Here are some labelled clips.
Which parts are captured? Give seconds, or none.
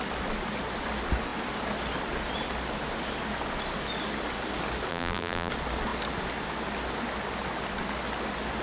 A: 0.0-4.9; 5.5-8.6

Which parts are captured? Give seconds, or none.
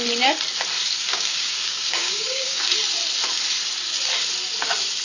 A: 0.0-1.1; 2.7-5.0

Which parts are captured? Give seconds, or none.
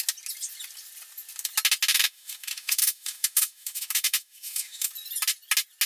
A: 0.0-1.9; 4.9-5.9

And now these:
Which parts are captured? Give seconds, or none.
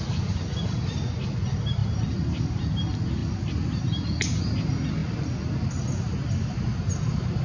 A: 0.0-7.4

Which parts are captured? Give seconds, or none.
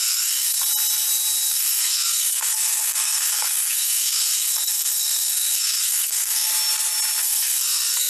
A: 0.6-1.5; 6.5-7.2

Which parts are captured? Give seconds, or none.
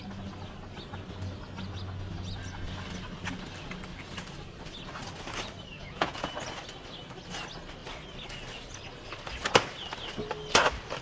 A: 0.0-5.7; 6.3-11.0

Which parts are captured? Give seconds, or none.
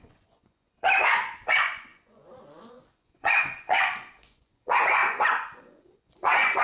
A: none